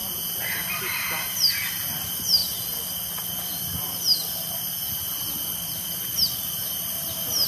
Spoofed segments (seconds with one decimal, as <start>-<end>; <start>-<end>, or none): 0.8-2.4; 6.6-7.5